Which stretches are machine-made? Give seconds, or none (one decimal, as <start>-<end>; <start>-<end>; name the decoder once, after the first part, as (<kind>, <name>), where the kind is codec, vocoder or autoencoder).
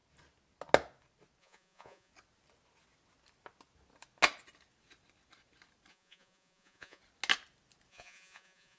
1.4-2.1 (vocoder, Vocos); 5.9-7.0; 7.9-8.8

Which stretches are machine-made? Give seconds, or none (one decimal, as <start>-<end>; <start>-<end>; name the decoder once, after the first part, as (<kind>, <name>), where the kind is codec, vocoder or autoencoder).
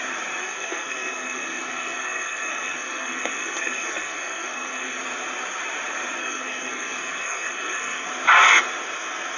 0.4-5.0 (codec, SNAC); 6.2-8.1